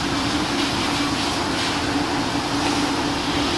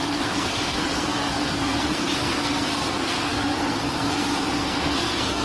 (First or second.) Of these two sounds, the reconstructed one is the second